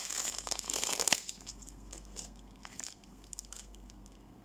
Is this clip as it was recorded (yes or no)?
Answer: no